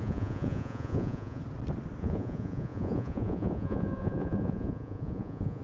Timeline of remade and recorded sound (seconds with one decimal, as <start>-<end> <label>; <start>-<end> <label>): 0.0-1.4 remade; 1.4-2.0 recorded; 2.0-5.6 remade